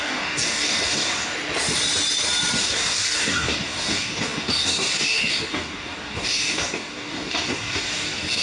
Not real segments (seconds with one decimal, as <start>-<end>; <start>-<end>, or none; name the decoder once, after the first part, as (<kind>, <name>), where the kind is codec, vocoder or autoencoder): 0.0-1.3 (codec, DAC); 2.6-8.4

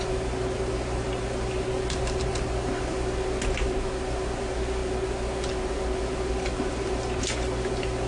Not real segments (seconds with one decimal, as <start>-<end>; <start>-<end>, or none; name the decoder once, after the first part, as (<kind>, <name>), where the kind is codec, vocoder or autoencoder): none

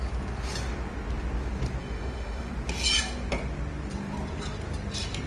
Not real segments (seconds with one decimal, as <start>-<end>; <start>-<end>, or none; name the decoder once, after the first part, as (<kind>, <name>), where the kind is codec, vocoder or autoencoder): 1.8-2.5 (autoencoder, DAC-VAE)

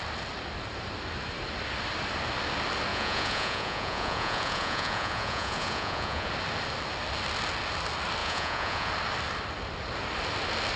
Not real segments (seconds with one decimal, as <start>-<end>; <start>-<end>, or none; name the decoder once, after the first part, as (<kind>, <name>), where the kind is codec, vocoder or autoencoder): 2.9-6.3 (vocoder, Vocos); 8.2-8.9

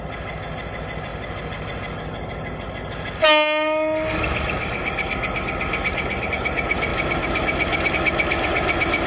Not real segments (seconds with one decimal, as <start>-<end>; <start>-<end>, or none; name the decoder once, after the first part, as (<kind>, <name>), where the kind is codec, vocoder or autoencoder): none

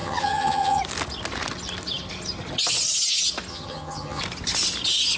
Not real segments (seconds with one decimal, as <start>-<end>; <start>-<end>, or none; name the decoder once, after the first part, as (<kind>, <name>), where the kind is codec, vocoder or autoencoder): 0.0-0.8 (vocoder, HiFi-GAN); 3.5-4.2

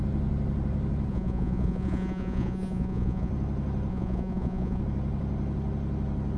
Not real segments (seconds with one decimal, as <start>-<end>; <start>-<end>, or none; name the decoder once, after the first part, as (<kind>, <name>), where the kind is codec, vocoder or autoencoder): 1.1-3.3 (vocoder, Vocos); 3.9-4.8

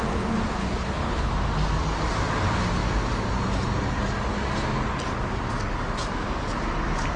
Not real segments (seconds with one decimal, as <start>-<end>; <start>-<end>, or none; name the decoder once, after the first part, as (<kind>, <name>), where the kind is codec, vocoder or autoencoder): 0.6-1.3 (codec, HILCodec)